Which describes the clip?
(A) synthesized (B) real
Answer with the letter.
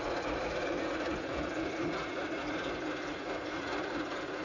A